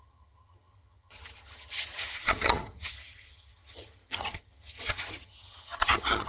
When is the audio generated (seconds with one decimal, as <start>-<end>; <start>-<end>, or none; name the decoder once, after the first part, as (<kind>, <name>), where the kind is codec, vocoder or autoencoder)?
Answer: 0.0-6.3 (vocoder, HiFi-GAN)